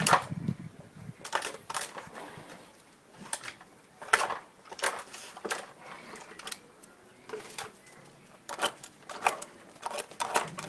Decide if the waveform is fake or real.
real